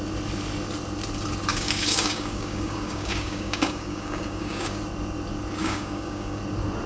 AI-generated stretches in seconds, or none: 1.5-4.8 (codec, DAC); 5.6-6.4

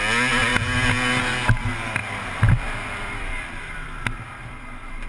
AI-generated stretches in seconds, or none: 2.0-4.6 (vocoder, BigVGAN v2)

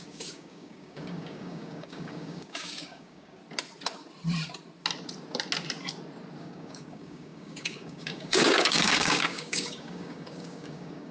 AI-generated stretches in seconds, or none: 0.0-3.4 (codec, DAC); 6.4-11.1

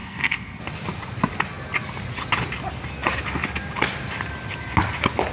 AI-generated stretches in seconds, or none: 0.0-0.6 (codec, SNAC)